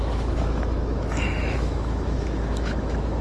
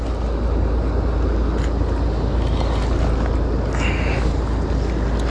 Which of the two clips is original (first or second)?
second